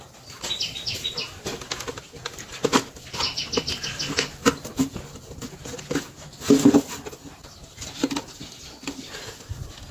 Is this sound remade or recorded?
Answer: recorded